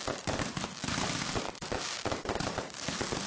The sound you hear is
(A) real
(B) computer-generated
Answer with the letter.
A